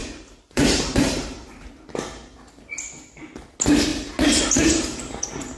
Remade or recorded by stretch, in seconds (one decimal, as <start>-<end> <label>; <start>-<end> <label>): 0.0-1.7 remade; 1.7-5.6 recorded